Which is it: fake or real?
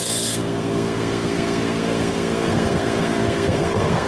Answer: fake